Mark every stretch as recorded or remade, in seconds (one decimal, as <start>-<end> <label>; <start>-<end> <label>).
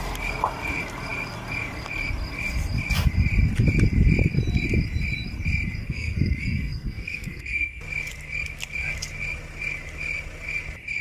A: 0.0-5.8 recorded; 5.8-7.8 remade; 7.8-11.0 recorded